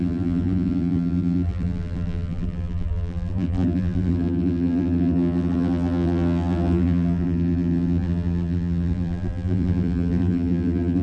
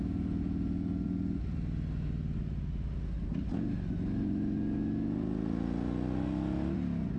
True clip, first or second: second